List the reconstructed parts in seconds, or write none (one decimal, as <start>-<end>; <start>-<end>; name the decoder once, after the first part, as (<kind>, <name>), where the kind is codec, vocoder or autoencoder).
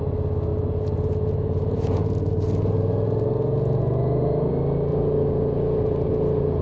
0.5-4.5 (vocoder, Vocos); 4.9-6.6